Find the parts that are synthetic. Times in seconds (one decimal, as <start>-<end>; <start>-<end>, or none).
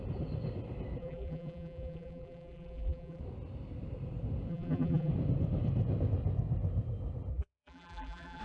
1.0-3.2; 4.5-5.1; 7.3-8.4